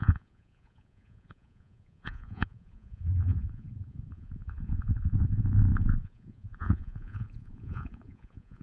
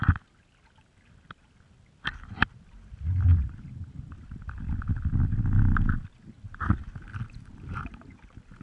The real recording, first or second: second